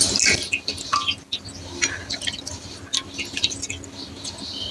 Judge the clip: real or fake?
real